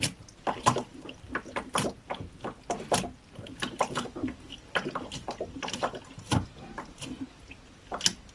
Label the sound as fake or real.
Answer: real